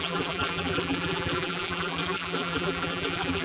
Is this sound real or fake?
fake